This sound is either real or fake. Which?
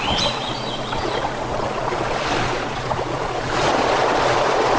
fake